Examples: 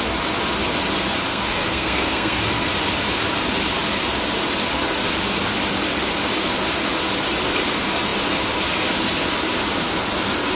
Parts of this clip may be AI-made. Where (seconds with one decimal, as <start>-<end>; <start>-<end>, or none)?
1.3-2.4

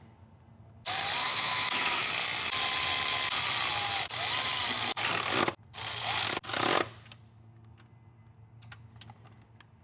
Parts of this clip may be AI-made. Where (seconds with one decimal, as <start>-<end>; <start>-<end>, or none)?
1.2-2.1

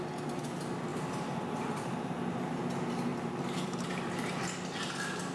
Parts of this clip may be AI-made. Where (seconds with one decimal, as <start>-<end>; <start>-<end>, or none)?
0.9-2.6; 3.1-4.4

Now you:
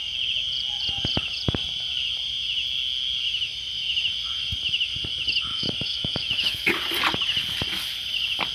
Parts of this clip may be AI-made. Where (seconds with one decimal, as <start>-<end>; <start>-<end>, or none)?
5.5-6.7

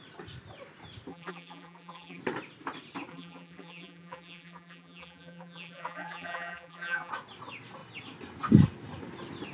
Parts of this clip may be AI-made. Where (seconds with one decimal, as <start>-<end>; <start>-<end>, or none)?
1.1-2.2; 3.1-7.1

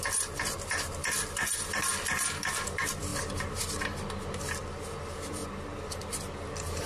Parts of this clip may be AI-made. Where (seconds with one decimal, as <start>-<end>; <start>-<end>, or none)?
0.0-3.1; 4.1-5.4; 5.9-6.9

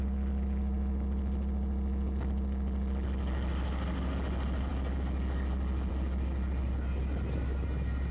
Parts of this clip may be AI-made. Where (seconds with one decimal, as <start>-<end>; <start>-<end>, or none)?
none

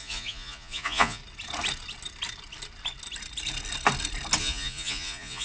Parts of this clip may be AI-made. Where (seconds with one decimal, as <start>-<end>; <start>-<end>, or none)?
0.0-1.2; 4.4-5.4